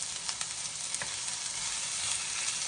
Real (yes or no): yes